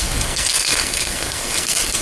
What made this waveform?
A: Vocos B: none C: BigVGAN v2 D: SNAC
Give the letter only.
D